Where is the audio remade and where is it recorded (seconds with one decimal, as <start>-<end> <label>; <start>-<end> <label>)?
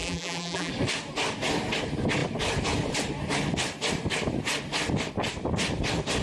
0.0-0.7 remade; 0.7-6.2 recorded